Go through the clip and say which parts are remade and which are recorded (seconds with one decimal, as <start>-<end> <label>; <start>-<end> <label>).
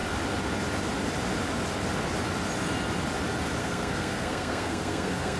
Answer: 0.0-3.6 recorded; 3.6-5.4 remade